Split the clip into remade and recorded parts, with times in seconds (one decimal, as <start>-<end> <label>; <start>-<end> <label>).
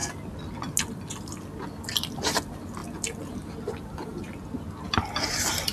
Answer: 0.0-1.1 recorded; 1.1-2.8 remade; 2.8-3.3 recorded; 3.3-4.1 remade; 4.1-4.9 recorded; 4.9-5.7 remade